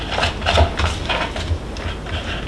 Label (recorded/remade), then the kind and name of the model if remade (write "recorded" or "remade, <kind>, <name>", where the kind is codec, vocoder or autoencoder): recorded